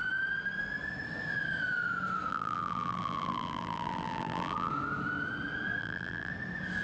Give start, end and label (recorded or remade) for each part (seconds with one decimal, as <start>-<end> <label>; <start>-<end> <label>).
0.0-2.3 recorded; 2.3-4.7 remade; 4.7-5.8 recorded; 5.8-6.3 remade; 6.3-6.8 recorded